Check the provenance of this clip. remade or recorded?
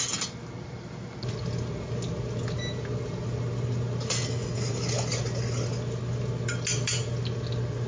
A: recorded